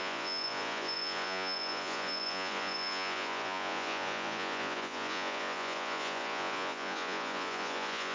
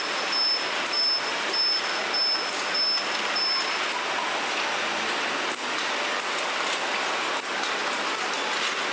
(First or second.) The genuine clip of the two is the second